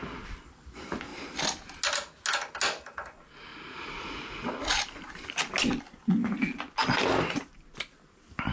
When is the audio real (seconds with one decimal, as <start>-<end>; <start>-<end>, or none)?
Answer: 0.0-3.5; 4.5-8.5